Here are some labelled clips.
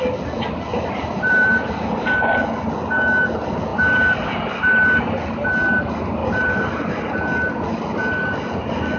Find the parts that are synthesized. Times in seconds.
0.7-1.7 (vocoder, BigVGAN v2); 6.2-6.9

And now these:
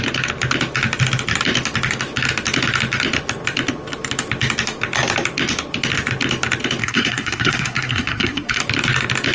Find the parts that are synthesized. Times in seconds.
6.8-8.6 (codec, SNAC)

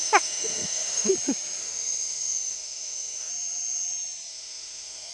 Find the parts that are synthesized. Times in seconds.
0.0-1.1 (autoencoder, DAC-VAE); 1.6-3.3; 4.3-5.1

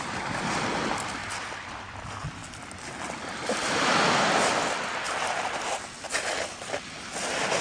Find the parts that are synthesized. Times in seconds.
0.0-2.4 (vocoder, BigVGAN v2); 6.0-7.6

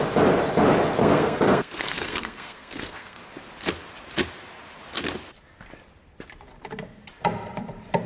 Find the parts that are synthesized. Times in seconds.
1.0-3.2 (codec, SNAC)

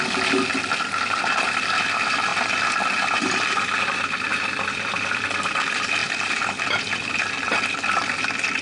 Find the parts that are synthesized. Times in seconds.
6.0-6.6 (vocoder, BigVGAN v2)

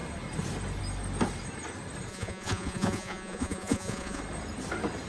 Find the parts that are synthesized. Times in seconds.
2.1-4.2 (vocoder, Vocos)

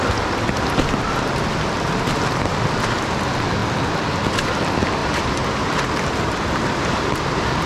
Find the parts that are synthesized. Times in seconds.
5.0-7.7 (vocoder, BigVGAN v2)